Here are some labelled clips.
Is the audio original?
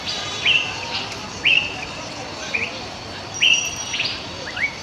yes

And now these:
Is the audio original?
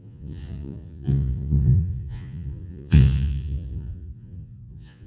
no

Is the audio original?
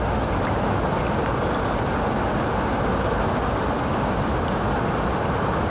yes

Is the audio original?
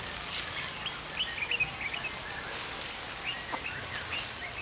yes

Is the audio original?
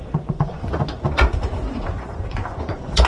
no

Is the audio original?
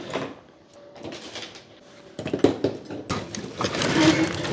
yes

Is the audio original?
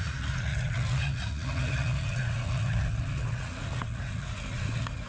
no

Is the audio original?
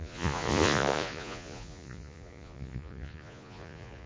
no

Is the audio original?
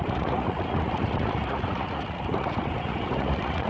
no